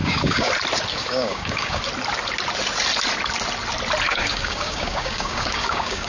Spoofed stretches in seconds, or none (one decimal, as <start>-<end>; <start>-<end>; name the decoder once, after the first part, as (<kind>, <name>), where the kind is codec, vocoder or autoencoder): 0.0-0.5 (codec, DAC); 0.9-1.8; 4.1-6.1